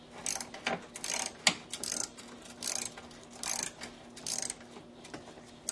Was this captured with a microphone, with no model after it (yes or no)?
yes